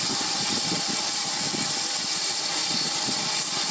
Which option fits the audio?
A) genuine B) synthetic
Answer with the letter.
A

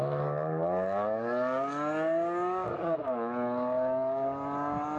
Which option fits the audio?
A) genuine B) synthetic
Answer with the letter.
B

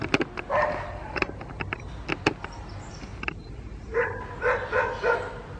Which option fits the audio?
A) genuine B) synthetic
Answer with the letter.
A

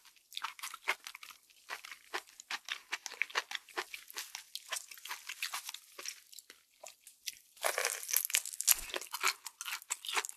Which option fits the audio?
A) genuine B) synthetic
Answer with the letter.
A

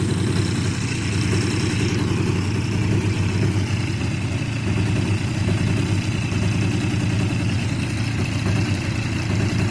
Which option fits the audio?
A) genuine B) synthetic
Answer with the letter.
A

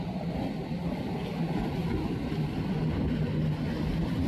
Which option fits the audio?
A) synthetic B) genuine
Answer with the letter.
B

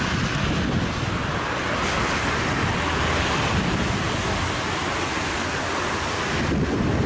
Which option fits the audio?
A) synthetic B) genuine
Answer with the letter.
B